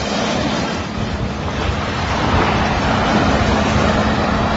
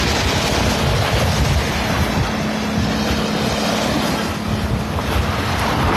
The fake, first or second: first